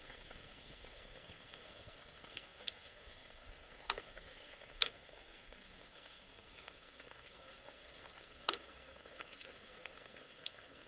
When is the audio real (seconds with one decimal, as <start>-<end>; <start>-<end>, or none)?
none